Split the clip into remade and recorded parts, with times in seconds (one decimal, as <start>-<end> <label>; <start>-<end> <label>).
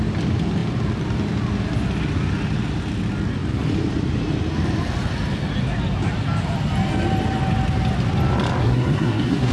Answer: 0.0-8.6 recorded; 8.6-9.5 remade